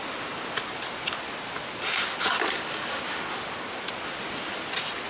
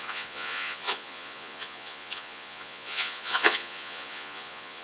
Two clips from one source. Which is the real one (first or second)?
first